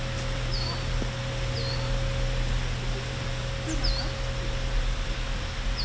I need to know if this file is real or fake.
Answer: real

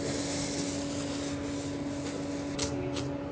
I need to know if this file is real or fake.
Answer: real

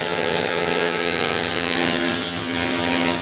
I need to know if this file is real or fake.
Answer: fake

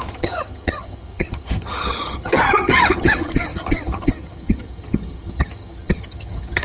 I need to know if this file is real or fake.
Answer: fake